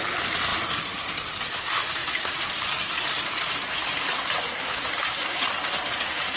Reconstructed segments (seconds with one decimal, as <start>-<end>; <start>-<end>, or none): 0.5-1.1; 2.0-5.5